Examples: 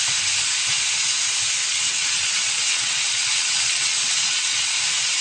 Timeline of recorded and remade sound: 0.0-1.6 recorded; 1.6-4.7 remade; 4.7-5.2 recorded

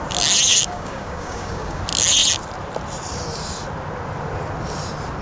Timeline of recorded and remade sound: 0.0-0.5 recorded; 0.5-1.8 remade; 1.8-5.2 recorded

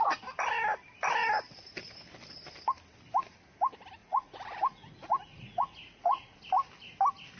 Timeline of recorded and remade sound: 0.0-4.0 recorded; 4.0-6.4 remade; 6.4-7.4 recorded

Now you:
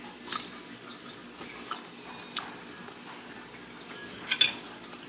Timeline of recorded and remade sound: 0.0-5.1 recorded

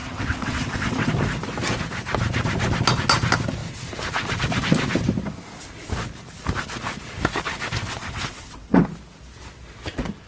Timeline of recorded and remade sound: 0.0-1.1 remade; 1.1-8.0 recorded; 8.0-8.8 remade; 8.8-10.3 recorded

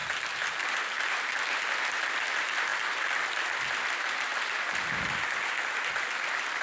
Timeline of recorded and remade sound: 0.0-6.6 recorded

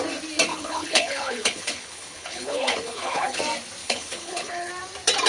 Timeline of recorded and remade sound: 0.0-0.5 recorded; 0.5-3.4 remade; 3.4-3.8 recorded; 3.8-4.7 remade; 4.7-5.3 recorded

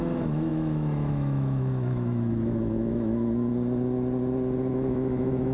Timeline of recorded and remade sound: 0.0-3.5 remade; 3.5-4.7 recorded; 4.7-5.5 remade